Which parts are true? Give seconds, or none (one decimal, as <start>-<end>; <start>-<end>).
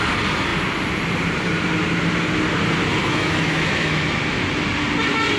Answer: 0.0-3.0; 4.0-5.4